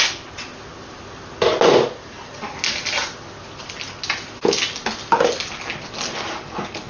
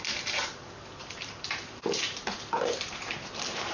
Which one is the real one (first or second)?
first